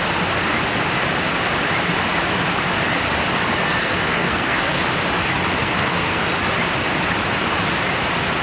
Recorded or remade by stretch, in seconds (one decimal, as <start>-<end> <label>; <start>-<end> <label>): 0.0-3.8 recorded; 3.8-4.8 remade; 4.8-5.6 recorded; 5.6-6.2 remade; 6.2-8.4 recorded